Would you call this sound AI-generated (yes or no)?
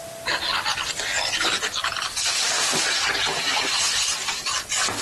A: no